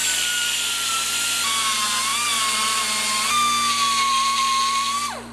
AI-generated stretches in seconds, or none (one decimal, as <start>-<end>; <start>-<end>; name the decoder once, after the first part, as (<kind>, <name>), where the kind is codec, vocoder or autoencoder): 0.0-0.9 (vocoder, BigVGAN v2)